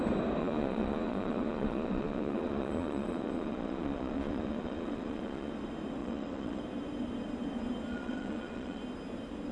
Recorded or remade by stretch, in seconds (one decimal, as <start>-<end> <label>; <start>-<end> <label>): 0.0-0.4 recorded; 0.4-5.5 remade; 5.5-6.0 recorded; 6.0-6.6 remade; 6.6-7.9 recorded; 7.9-8.8 remade; 8.8-9.5 recorded